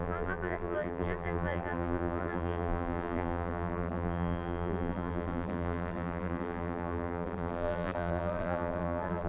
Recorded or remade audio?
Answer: remade